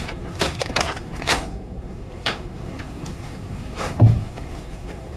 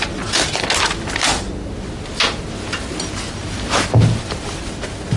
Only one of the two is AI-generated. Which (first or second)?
first